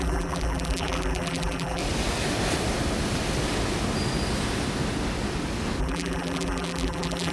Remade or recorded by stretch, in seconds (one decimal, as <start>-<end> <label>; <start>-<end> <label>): 0.0-1.8 remade; 1.8-5.8 recorded; 5.8-7.3 remade